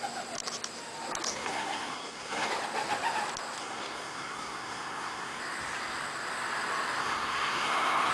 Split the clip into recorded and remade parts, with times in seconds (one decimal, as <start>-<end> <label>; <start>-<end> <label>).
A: 0.0-1.3 recorded; 1.3-2.5 remade; 2.5-3.6 recorded; 3.6-5.4 remade; 5.4-7.0 recorded; 7.0-8.1 remade